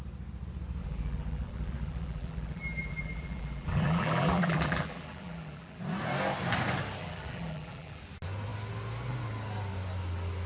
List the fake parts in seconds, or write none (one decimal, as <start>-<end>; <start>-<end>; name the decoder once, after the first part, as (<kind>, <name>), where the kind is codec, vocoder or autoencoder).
0.8-5.8 (vocoder, BigVGAN v2); 7.0-8.0